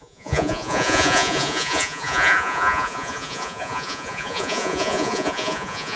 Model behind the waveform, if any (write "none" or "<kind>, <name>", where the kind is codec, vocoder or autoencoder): vocoder, Vocos